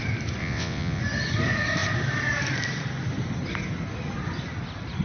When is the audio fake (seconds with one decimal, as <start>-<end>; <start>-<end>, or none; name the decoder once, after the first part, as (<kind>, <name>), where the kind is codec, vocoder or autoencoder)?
0.4-1.0 (vocoder, WaveNeXt)